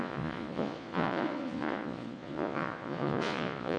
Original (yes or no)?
no